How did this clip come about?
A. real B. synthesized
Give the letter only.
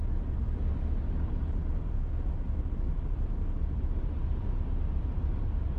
A